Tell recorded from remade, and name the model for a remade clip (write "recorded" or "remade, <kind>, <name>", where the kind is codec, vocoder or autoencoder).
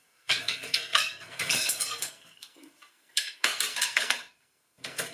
remade, codec, SNAC